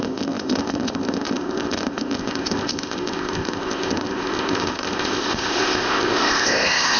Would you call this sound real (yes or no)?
no